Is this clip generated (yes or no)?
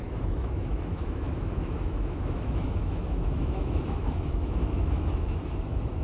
yes